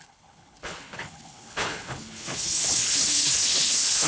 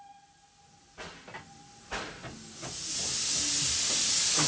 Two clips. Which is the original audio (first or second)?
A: second